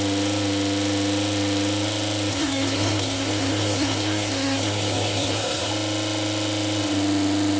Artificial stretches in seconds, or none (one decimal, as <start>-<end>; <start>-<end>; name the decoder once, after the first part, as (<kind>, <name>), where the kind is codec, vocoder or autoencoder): 2.3-5.7 (codec, SNAC)